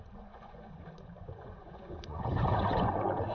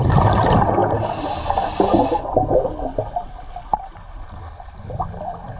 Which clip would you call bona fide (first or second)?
second